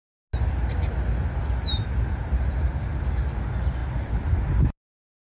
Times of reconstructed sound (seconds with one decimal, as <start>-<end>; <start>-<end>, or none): 1.4-3.1; 3.8-4.4